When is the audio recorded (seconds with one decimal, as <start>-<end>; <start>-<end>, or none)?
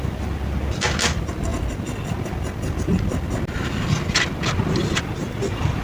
1.5-5.0